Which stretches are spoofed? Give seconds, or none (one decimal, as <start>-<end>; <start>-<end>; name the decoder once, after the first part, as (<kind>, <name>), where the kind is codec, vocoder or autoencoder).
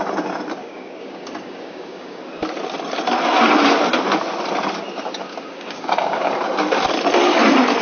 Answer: 0.6-2.2 (codec, DAC); 5.3-6.3